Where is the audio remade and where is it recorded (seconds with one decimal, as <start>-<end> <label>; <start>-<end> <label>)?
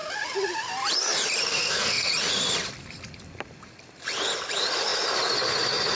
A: 0.0-1.5 recorded; 1.5-2.1 remade; 2.1-5.9 recorded